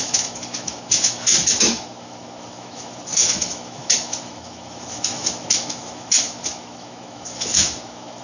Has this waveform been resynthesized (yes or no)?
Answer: yes